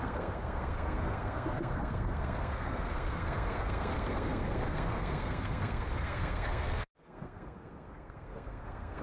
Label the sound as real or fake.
fake